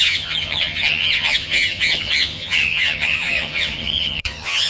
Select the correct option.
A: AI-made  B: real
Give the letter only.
A